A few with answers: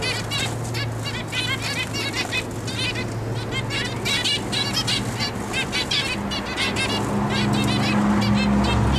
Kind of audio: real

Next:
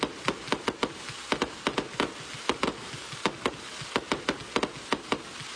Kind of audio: real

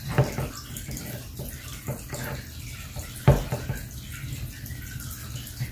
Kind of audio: real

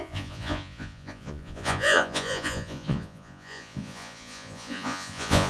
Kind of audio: fake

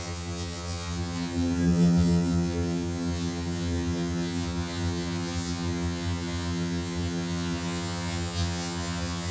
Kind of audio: fake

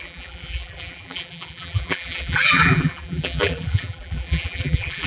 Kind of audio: fake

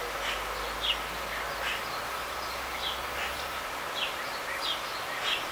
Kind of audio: real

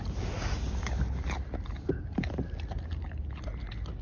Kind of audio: real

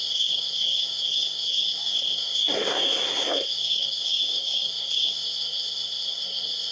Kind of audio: fake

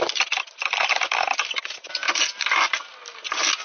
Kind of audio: real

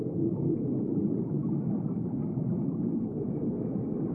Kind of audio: real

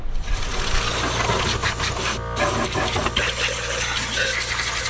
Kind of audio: real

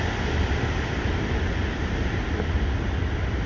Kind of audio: real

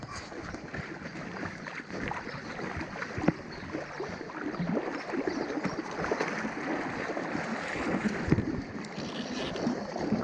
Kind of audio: real